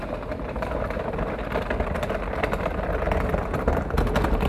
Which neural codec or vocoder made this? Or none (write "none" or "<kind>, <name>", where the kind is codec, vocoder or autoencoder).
none